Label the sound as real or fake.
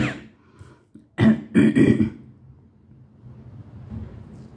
real